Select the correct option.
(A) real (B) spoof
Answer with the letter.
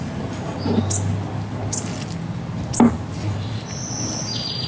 A